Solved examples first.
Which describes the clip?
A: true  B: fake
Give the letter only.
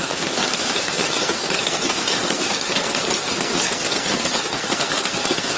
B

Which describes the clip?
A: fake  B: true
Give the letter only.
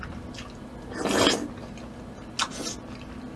B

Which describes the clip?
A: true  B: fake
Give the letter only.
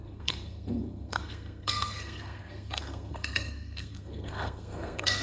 B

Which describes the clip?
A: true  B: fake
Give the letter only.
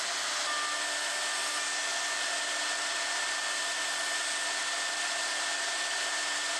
A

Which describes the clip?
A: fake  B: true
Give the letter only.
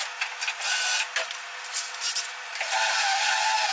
B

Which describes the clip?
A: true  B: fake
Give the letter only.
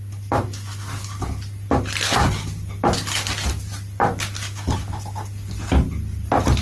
A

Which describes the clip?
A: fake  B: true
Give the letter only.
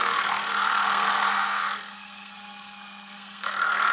A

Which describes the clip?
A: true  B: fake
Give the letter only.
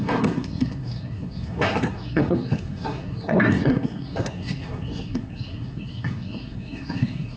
B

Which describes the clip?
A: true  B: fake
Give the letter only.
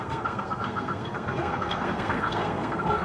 B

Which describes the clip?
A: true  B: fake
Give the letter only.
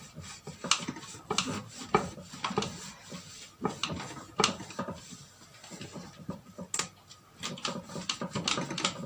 A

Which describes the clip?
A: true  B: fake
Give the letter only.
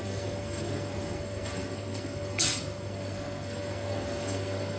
B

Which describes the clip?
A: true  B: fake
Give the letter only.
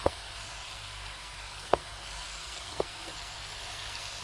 B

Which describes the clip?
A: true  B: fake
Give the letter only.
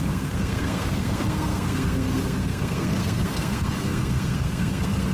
B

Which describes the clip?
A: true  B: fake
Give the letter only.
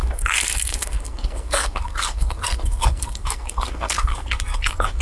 B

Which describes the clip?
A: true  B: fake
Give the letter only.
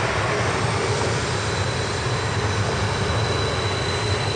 A